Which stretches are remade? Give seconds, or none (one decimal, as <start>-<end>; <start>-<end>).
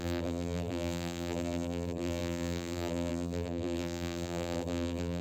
0.0-5.2